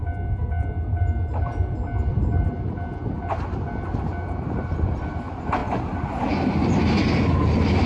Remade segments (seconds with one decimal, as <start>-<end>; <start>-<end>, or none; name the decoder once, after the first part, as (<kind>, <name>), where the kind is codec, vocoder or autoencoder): 4.2-7.9 (vocoder, BigVGAN v2)